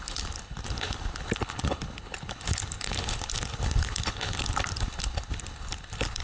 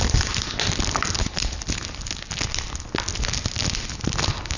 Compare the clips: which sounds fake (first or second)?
first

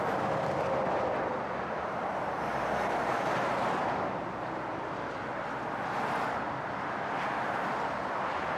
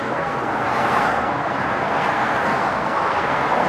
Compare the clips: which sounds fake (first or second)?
second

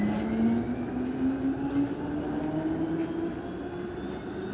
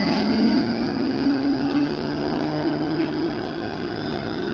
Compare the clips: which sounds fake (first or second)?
second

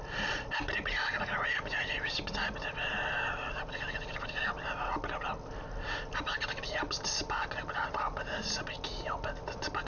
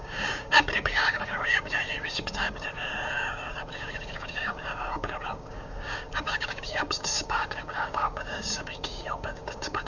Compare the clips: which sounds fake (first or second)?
second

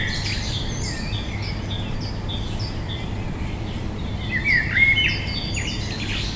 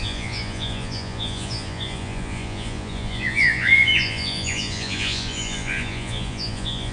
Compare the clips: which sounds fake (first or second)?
second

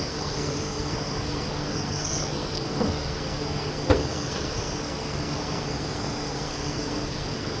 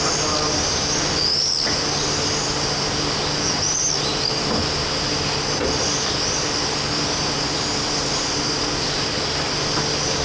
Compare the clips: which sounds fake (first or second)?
first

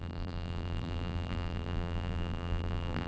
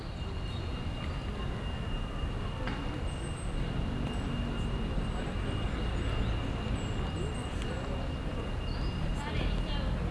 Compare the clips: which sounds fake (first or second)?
first